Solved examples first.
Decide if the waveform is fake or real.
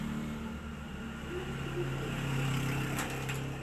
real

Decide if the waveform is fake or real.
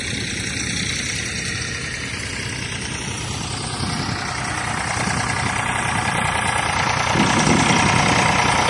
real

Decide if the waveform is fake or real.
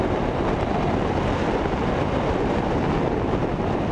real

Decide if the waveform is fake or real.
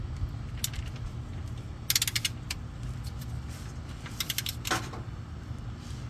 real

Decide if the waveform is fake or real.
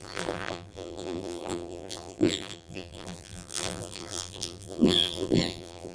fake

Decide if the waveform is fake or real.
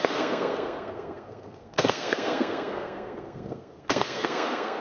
fake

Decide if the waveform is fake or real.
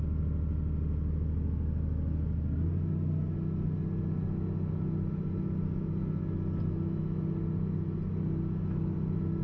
real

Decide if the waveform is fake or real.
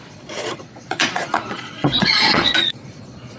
fake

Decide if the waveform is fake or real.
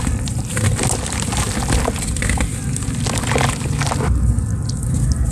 real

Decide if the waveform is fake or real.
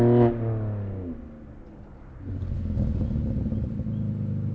real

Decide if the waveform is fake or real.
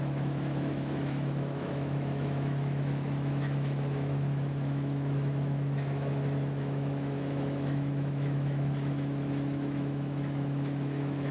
fake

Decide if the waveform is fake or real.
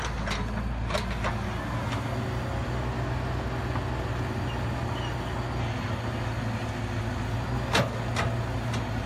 real